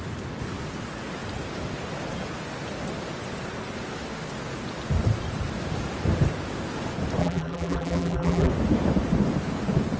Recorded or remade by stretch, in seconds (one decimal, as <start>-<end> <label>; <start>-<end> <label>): 0.0-7.2 recorded; 7.2-8.5 remade; 8.5-10.0 recorded